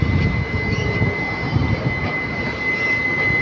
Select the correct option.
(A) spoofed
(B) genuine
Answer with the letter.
B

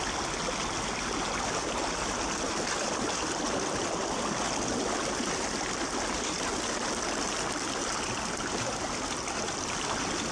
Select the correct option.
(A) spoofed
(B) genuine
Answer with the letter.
B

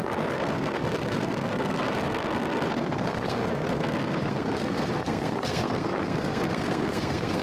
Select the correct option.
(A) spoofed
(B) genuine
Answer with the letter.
A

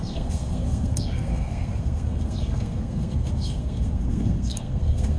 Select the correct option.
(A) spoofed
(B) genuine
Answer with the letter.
A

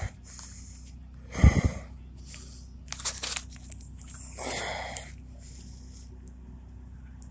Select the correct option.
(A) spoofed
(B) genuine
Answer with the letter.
B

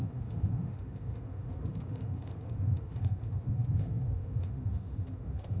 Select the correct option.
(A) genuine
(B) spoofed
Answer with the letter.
B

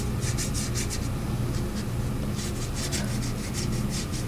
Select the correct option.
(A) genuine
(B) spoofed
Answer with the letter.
A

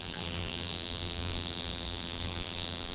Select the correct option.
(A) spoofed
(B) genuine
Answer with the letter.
A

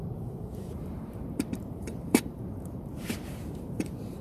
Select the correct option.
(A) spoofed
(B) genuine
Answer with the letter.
A